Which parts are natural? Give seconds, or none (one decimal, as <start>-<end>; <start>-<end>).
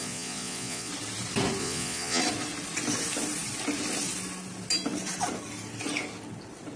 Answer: 0.9-1.6; 2.2-6.8